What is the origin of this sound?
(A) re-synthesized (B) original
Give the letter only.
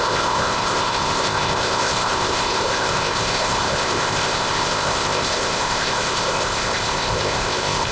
A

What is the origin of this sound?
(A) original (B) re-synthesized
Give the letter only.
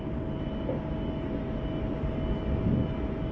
A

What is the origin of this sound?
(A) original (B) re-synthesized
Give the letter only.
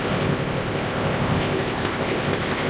B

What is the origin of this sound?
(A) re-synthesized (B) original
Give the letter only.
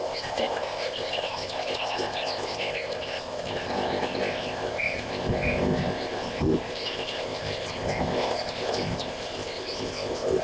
A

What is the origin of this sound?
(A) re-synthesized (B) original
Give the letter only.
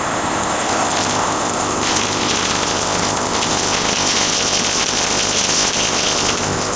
A